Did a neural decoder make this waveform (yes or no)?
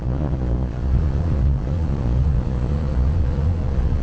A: yes